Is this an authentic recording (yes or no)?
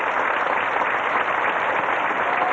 yes